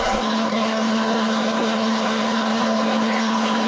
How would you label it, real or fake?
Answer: fake